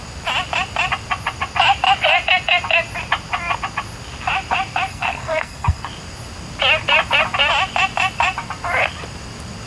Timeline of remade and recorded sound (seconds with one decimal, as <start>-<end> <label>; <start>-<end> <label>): 0.0-4.9 recorded; 4.9-5.9 remade; 5.9-9.7 recorded